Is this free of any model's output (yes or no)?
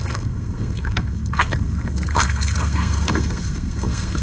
no